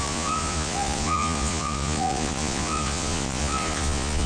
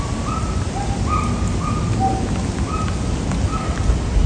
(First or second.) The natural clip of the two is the second